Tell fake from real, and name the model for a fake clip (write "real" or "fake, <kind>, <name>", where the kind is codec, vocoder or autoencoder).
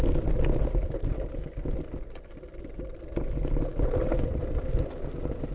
real